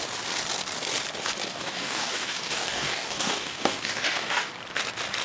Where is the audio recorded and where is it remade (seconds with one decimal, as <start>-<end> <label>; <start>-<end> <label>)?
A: 0.0-1.5 recorded; 1.5-4.5 remade; 4.5-5.2 recorded